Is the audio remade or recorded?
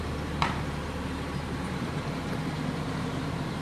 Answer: remade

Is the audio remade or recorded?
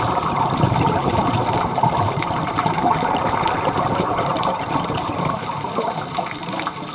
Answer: remade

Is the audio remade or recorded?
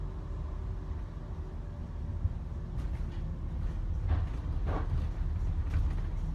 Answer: recorded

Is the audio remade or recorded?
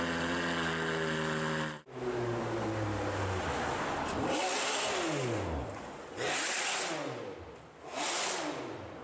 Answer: recorded